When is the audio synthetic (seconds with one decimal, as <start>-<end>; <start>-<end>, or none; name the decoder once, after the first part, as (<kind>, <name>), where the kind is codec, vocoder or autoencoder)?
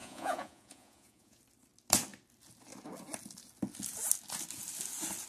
0.0-1.4 (vocoder, Vocos)